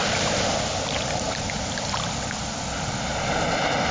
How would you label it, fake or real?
real